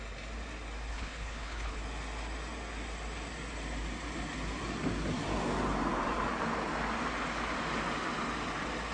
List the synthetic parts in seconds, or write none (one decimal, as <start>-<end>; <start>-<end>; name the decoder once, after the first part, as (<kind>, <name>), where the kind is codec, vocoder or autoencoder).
0.9-1.8 (codec, HILCodec)